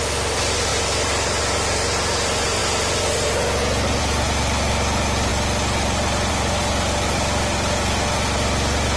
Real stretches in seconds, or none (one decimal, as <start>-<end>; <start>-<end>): 0.0-9.0

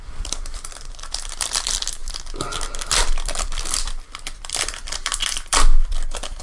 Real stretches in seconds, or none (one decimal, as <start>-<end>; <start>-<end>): none

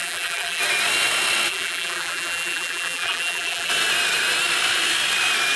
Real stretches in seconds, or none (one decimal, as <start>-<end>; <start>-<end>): 0.6-1.5; 3.7-5.6